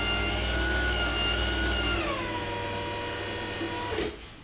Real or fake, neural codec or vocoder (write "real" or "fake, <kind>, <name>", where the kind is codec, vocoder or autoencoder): real